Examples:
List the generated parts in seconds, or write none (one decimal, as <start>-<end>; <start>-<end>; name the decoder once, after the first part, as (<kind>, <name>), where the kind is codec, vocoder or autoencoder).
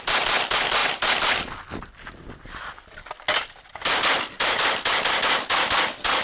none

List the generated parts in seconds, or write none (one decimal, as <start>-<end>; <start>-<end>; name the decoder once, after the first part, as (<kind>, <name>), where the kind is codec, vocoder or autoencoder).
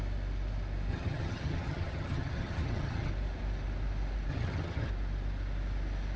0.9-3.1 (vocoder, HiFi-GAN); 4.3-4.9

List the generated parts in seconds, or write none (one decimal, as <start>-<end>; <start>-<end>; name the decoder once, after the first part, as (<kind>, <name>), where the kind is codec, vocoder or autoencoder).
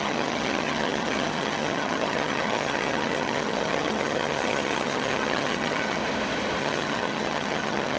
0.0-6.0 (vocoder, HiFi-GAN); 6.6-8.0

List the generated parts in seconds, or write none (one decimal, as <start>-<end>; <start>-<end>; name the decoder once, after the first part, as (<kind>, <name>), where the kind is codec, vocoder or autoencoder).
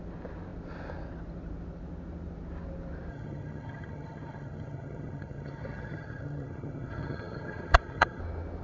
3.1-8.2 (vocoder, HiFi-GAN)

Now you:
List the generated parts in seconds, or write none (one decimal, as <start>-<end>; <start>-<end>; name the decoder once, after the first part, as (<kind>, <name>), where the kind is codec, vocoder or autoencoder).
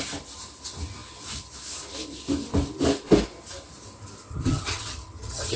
4.3-5.6 (vocoder, HiFi-GAN)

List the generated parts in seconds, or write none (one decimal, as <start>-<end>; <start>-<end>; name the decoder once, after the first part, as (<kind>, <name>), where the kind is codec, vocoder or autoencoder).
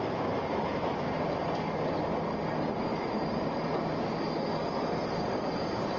none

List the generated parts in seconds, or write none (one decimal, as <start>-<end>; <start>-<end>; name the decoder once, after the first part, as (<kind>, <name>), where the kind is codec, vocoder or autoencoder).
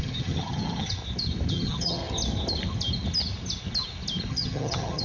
0.0-1.0 (vocoder, HiFi-GAN); 1.5-2.0; 4.3-5.0